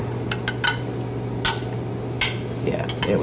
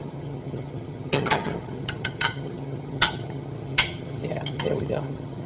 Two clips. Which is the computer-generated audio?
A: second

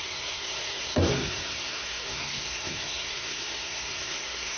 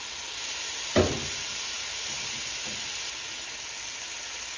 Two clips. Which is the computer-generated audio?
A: first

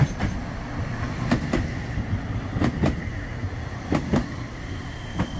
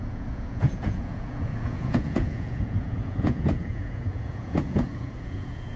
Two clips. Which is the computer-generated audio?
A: second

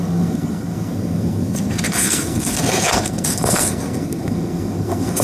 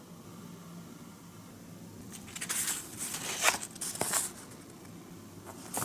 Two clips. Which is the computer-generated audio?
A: first